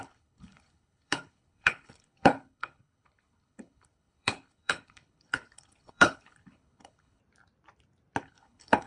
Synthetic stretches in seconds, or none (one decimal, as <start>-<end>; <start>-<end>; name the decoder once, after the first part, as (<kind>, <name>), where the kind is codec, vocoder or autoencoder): 0.0-7.2 (codec, HILCodec); 8.2-8.9